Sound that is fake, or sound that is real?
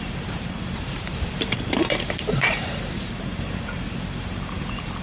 fake